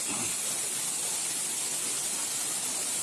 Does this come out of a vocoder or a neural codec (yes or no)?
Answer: no